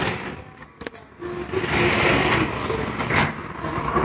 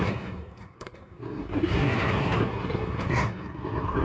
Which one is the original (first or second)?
first